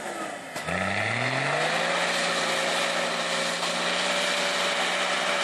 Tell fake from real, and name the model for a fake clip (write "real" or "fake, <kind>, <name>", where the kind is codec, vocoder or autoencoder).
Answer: real